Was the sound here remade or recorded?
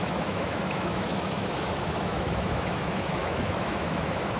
remade